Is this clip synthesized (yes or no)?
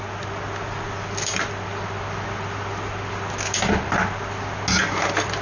no